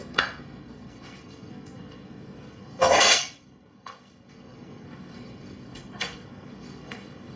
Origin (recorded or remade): remade